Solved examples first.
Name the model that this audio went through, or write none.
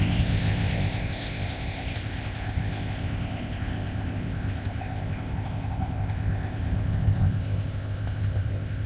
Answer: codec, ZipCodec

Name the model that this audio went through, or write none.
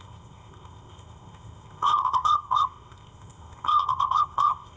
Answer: codec, ZipCodec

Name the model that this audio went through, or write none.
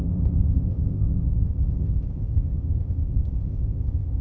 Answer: codec, ZipCodec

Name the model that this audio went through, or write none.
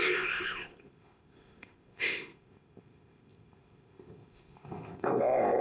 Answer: codec, ZipCodec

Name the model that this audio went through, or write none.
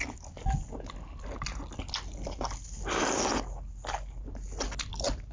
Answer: none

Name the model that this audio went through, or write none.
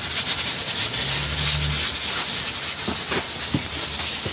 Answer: none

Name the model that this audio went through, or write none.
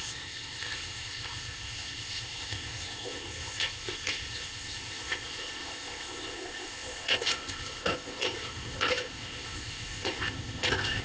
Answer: codec, ZipCodec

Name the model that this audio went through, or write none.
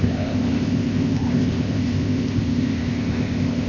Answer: codec, ZipCodec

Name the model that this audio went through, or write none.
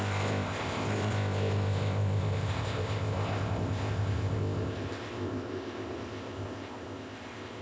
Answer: codec, ZipCodec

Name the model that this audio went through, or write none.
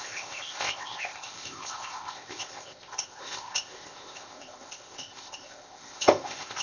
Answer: codec, ZipCodec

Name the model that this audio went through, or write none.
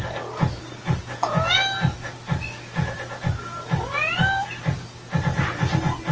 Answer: none